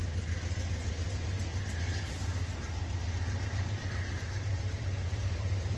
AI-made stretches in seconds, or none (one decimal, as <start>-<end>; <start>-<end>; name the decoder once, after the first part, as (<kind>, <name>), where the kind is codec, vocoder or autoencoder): 3.5-5.8 (vocoder, BigVGAN v2)